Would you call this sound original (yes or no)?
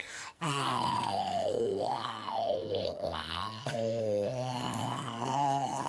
no